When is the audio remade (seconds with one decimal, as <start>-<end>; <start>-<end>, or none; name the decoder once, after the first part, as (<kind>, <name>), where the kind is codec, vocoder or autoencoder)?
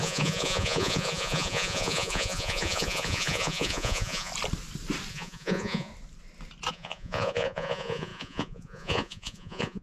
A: 0.0-4.3 (vocoder, Vocos); 5.1-5.9; 6.7-9.8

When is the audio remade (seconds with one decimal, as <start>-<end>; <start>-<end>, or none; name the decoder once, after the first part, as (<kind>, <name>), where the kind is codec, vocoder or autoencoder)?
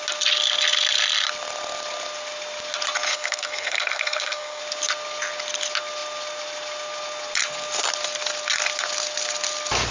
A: 3.1-4.6 (codec, SNAC)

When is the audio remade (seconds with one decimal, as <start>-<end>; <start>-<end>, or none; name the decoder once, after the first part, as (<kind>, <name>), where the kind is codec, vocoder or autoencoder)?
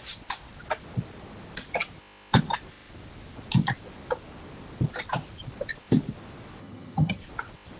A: 6.6-7.2 (vocoder, HiFi-GAN)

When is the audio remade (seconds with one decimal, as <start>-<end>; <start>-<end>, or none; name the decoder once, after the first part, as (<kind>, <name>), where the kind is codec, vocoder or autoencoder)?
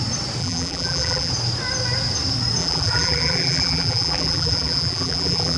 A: 0.4-1.3 (vocoder, BigVGAN v2); 2.6-5.6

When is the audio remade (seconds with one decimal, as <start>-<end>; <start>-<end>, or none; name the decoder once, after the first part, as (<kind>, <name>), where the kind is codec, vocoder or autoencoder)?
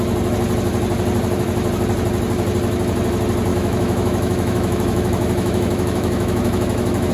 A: 3.5-7.1 (autoencoder, DAC-VAE)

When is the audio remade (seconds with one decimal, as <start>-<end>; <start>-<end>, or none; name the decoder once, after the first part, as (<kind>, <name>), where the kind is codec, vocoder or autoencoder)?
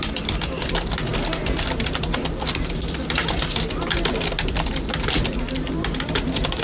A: 0.0-1.1 (vocoder, BigVGAN v2); 5.1-6.6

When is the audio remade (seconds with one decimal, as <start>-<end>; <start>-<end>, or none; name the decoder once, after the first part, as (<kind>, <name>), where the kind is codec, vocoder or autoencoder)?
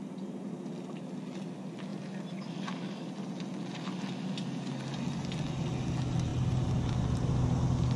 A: none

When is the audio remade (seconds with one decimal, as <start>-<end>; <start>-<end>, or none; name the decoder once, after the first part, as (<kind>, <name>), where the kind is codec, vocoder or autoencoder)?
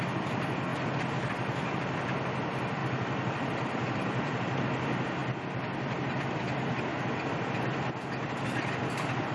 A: 0.7-1.3 (vocoder, BigVGAN v2); 2.8-4.6